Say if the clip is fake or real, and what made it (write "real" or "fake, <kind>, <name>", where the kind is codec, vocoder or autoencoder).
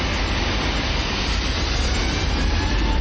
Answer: real